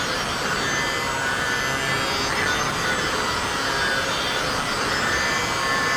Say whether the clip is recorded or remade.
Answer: recorded